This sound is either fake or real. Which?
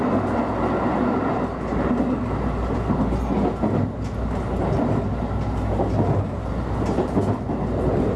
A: real